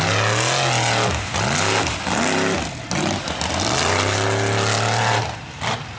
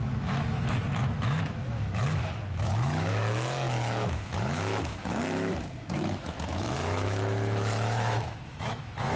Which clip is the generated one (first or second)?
second